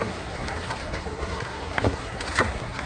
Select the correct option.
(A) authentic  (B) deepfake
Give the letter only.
B